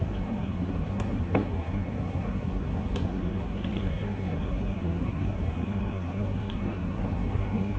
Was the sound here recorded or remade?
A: remade